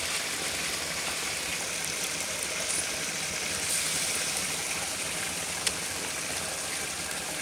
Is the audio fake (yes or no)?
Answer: no